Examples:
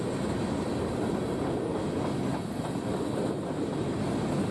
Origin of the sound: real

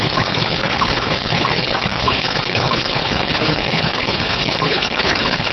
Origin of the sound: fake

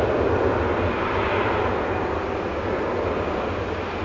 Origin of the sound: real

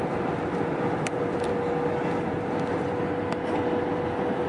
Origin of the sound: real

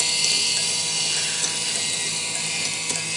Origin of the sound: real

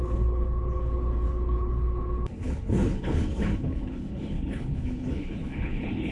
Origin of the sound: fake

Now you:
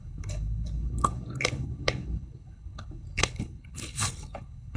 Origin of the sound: fake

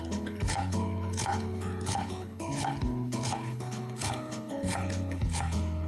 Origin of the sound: fake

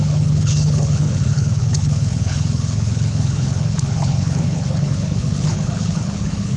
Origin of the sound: fake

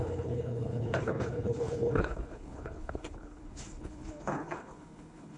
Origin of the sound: fake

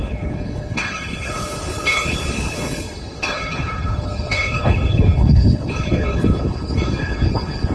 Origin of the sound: fake